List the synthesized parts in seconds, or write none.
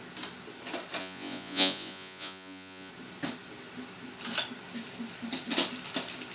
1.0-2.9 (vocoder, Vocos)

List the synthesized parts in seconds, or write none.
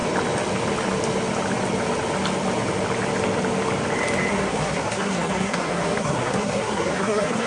4.3-7.5 (codec, SNAC)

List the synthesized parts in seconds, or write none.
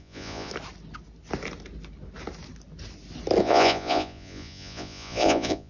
0.0-0.5 (vocoder, Vocos); 3.4-5.7